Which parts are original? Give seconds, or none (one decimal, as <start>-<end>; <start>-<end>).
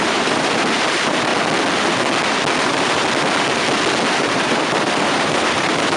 1.3-2.6; 3.0-4.2